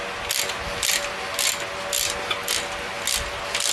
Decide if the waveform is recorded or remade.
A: recorded